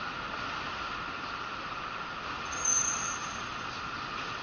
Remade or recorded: recorded